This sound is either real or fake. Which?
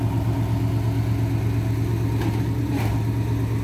real